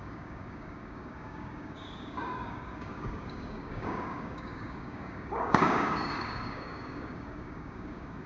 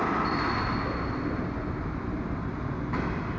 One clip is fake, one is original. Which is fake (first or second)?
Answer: first